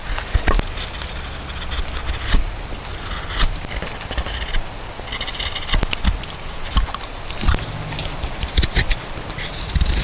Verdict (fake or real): real